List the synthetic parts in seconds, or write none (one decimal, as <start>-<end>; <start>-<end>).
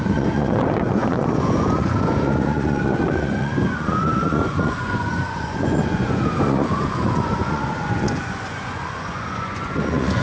0.0-10.2